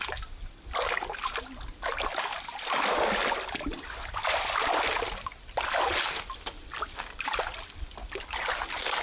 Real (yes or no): yes